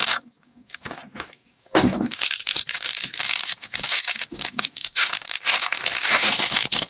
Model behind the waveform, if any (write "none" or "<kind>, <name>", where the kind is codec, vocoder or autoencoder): codec, DAC